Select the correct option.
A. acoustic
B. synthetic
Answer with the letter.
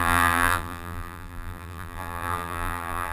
B